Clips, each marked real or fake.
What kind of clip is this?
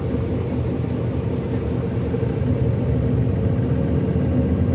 real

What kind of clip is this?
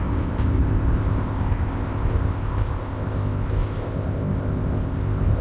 fake